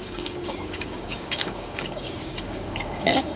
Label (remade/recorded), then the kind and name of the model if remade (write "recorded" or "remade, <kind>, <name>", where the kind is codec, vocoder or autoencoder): remade, codec, DAC